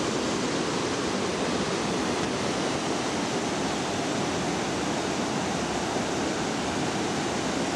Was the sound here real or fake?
real